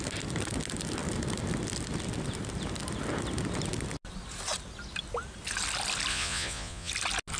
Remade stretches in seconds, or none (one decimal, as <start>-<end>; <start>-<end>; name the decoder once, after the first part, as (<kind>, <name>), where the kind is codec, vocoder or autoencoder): 6.1-6.9 (vocoder, Vocos)

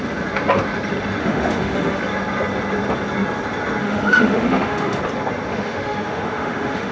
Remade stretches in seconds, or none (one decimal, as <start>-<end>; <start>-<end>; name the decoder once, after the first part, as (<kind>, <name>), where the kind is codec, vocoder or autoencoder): 1.2-2.0 (autoencoder, DAC-VAE); 3.8-5.0; 5.5-6.9

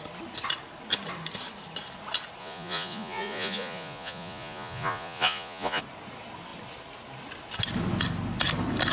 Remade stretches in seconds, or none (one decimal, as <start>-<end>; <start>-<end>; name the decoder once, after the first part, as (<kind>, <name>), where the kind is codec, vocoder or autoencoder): 2.4-5.8 (vocoder, Vocos)

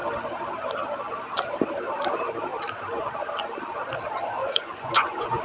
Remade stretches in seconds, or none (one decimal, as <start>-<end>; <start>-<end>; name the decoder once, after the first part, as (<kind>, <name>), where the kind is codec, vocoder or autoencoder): 4.4-5.4 (vocoder, Vocos)

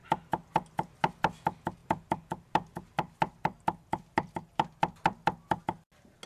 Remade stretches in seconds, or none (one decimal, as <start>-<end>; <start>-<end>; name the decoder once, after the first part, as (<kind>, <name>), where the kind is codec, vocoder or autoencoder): 1.8-5.6 (vocoder, BigVGAN v2)

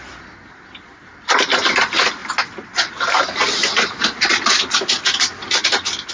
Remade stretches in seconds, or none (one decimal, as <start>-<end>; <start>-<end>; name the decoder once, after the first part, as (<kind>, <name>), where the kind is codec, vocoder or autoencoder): none